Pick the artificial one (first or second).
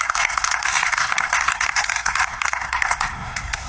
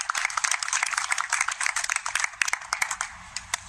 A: first